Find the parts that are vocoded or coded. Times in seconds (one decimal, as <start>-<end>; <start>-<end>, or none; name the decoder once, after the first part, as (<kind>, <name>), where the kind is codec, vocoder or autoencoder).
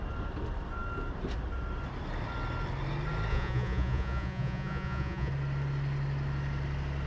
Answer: 3.3-5.3 (vocoder, Vocos)